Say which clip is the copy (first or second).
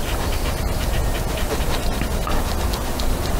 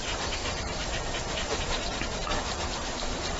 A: second